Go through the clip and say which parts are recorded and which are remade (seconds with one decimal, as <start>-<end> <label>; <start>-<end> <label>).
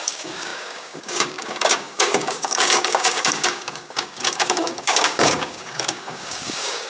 0.0-6.9 remade